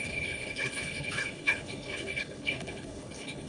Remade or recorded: remade